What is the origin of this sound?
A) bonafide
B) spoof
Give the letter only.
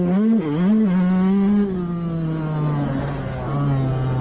A